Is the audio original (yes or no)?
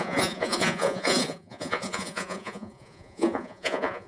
no